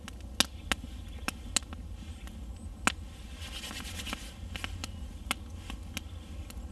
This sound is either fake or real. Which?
real